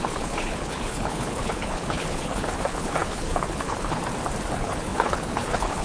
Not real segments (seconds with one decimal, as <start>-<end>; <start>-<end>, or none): 0.0-4.0; 4.5-5.8